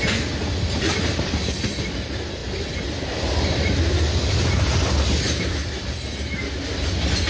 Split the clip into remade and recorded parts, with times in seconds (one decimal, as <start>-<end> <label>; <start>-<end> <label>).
0.0-7.3 recorded